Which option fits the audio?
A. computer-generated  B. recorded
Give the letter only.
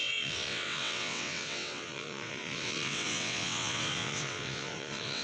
A